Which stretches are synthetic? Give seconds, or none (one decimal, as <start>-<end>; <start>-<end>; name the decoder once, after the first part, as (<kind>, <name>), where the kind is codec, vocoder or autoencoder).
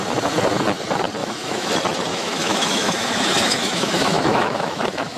1.2-1.7 (autoencoder, DAC-VAE); 2.1-5.2